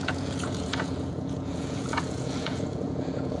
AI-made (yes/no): yes